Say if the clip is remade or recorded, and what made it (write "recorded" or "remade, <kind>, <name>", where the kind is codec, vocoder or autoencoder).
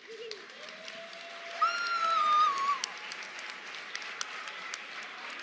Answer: recorded